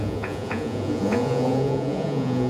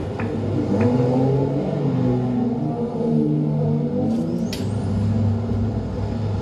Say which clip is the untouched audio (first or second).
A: second